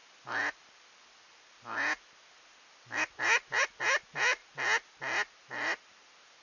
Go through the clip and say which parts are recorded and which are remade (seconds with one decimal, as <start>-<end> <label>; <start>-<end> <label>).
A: 0.0-6.4 recorded